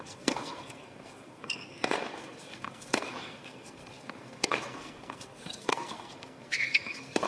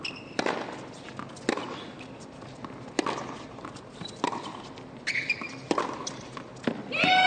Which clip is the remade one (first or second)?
first